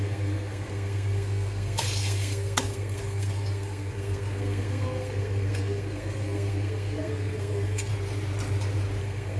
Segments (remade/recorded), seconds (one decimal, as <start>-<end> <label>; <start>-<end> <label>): 0.0-7.9 remade; 7.9-9.0 recorded; 9.0-9.4 remade